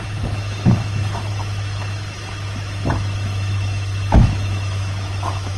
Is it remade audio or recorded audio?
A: remade